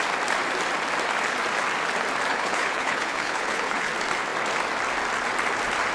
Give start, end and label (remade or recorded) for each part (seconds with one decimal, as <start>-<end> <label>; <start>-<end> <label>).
0.0-2.3 recorded; 2.3-3.9 remade; 3.9-5.9 recorded